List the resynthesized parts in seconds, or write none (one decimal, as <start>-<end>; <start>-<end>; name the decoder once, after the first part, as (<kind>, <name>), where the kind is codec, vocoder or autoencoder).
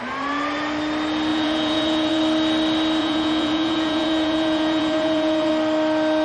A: 1.3-2.2 (vocoder, Vocos); 3.0-5.5